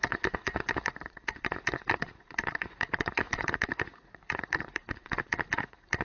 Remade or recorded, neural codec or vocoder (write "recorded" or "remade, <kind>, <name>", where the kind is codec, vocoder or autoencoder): remade, vocoder, Vocos